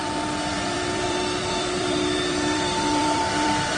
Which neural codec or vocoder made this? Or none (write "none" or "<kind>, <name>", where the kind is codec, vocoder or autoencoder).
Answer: vocoder, BigVGAN v2